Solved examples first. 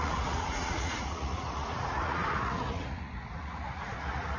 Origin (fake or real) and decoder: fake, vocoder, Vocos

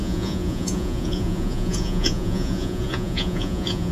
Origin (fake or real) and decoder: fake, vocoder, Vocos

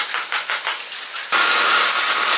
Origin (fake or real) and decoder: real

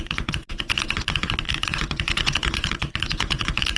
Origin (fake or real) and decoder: fake, vocoder, Vocos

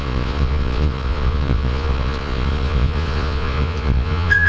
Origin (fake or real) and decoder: fake, vocoder, Vocos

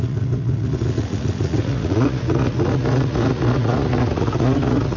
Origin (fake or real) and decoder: fake, vocoder, Vocos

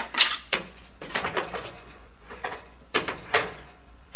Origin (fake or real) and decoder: fake, vocoder, Vocos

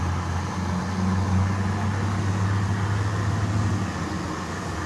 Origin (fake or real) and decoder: real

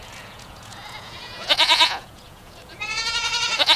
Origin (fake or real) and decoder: fake, vocoder, Vocos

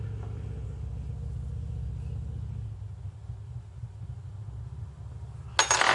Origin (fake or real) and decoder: real